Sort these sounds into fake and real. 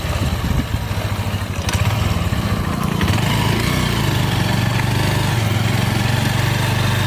real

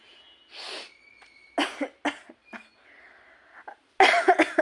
real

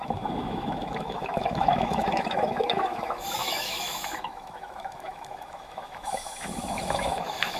fake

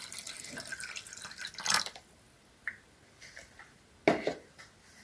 real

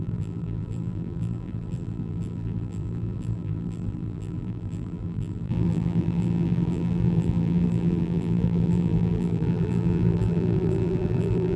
fake